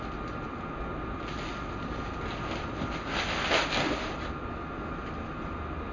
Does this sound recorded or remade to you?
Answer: recorded